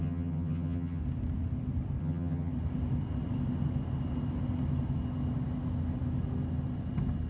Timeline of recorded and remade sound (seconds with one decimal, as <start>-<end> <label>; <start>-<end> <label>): 0.0-1.0 remade; 1.0-2.0 recorded; 2.0-2.5 remade; 2.5-7.3 recorded